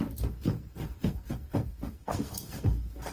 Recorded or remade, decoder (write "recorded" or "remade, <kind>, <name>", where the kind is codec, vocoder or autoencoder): remade, codec, SNAC